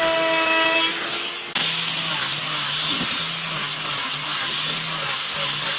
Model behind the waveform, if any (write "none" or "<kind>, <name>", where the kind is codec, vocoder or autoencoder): none